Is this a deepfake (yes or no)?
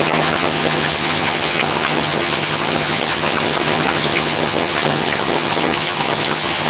yes